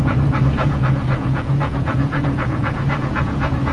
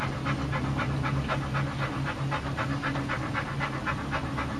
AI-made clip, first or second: first